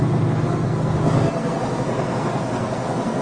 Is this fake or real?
fake